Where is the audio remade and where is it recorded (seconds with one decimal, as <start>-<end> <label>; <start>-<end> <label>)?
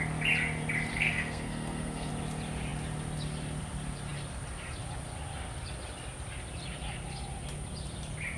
0.0-0.9 recorded; 0.9-2.1 remade; 2.1-8.4 recorded